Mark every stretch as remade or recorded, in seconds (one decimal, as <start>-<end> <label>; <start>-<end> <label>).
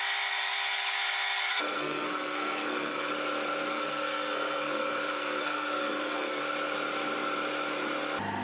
0.0-1.5 recorded; 1.5-3.1 remade; 3.1-3.7 recorded; 3.7-6.4 remade; 6.4-8.4 recorded